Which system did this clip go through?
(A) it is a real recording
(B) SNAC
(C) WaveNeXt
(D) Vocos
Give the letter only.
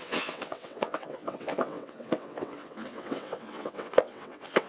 C